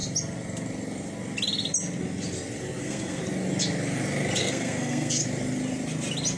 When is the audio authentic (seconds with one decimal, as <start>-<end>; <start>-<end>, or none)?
0.0-2.8; 3.2-4.4; 5.2-6.4